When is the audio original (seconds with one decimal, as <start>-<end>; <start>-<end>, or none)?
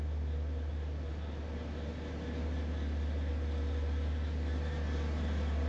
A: 0.0-5.7